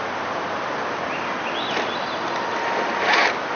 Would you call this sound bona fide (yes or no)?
yes